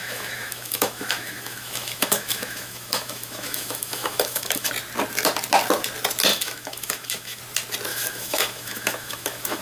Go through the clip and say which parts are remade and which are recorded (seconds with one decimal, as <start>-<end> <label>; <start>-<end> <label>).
0.0-4.7 remade; 4.7-6.3 recorded; 6.3-7.4 remade; 7.4-7.9 recorded; 7.9-9.6 remade